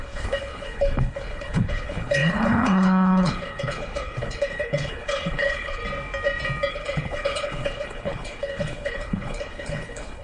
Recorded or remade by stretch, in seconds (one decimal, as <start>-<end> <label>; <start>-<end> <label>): 0.0-5.8 remade; 5.8-6.7 recorded; 6.7-10.2 remade